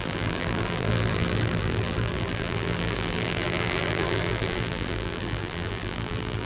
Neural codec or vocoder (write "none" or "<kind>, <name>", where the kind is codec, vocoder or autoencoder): vocoder, BigVGAN v2